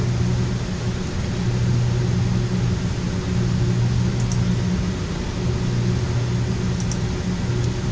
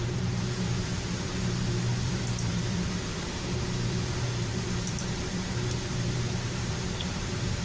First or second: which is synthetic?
second